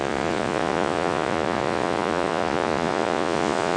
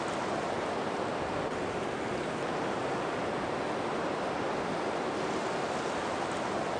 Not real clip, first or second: first